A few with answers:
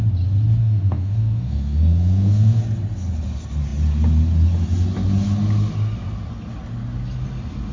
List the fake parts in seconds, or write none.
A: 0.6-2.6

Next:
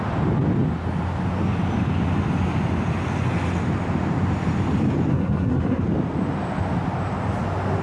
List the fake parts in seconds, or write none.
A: 5.1-5.8